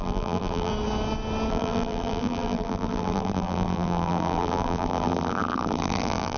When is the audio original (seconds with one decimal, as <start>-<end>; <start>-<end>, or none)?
0.7-1.5